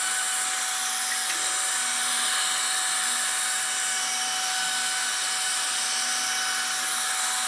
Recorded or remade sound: recorded